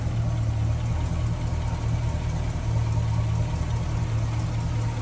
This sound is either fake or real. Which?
real